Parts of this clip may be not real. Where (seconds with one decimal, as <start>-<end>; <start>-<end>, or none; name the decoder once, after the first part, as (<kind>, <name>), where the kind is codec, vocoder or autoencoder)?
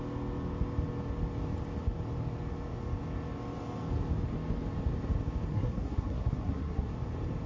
5.5-6.9 (codec, SNAC)